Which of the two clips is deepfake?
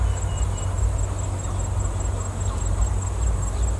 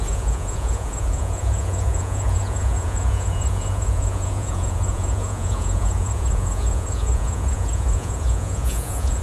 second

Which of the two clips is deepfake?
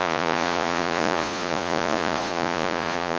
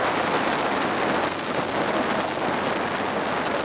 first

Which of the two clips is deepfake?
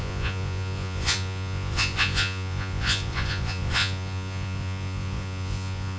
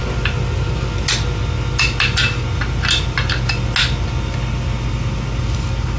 first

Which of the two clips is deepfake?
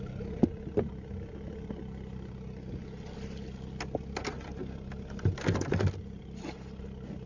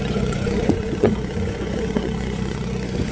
second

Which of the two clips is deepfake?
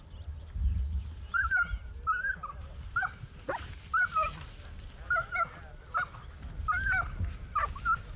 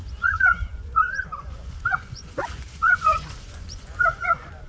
second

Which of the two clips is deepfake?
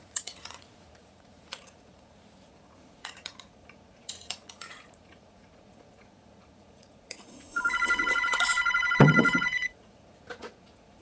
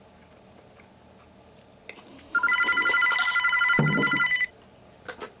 first